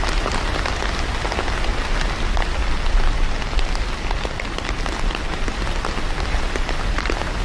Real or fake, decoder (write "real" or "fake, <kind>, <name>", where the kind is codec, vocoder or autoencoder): real